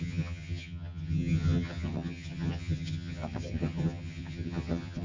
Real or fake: fake